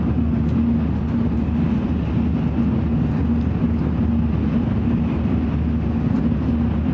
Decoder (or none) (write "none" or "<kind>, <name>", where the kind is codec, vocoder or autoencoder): none